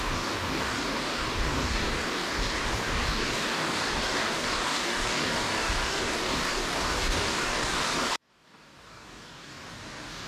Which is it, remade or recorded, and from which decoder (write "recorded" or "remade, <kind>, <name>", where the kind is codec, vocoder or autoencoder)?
remade, codec, DAC